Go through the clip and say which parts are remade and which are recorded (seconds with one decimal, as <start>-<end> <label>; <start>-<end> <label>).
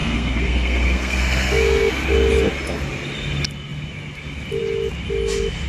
0.0-1.9 remade; 1.9-5.7 recorded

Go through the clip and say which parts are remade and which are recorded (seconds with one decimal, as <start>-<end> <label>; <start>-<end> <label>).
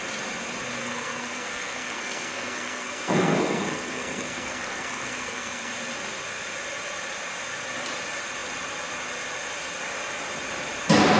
0.0-0.8 recorded; 0.8-5.7 remade; 5.7-11.2 recorded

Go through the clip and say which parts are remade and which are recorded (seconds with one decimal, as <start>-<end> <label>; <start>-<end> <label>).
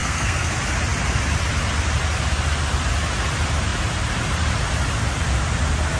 0.0-0.5 remade; 0.5-6.0 recorded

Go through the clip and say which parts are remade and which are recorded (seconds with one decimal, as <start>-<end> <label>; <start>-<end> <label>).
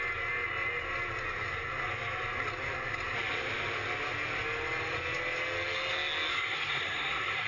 0.0-6.3 recorded; 6.3-7.5 remade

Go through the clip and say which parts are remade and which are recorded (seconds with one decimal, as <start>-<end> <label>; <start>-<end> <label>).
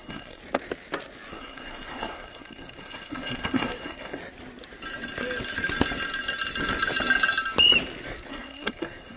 0.0-0.4 remade; 0.4-1.3 recorded; 1.3-4.2 remade; 4.2-8.3 recorded; 8.3-9.2 remade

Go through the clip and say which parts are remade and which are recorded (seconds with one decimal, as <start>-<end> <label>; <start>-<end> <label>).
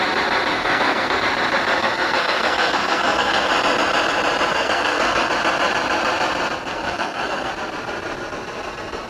0.0-0.5 recorded; 0.5-1.2 remade; 1.2-1.8 recorded; 1.8-3.5 remade; 3.5-4.5 recorded; 4.5-5.3 remade; 5.3-6.7 recorded; 6.7-7.5 remade; 7.5-9.1 recorded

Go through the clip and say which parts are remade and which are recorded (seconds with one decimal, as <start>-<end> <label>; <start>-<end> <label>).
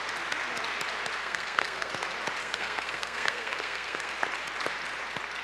0.0-1.2 recorded; 1.2-1.9 remade; 1.9-2.4 recorded; 2.4-4.1 remade; 4.1-5.4 recorded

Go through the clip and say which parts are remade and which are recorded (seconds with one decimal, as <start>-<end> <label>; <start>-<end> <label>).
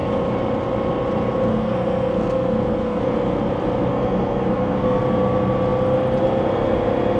0.0-1.5 recorded; 1.5-3.0 remade; 3.0-3.9 recorded; 3.9-5.0 remade; 5.0-7.2 recorded